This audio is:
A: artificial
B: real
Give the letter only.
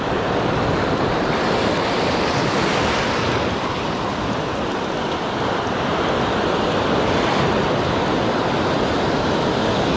B